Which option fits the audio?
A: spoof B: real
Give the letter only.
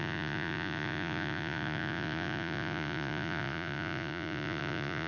A